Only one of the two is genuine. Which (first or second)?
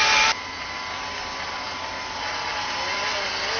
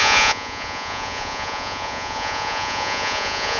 first